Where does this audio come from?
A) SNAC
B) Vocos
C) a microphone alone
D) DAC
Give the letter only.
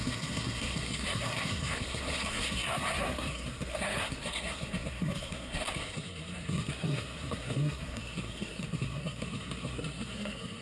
A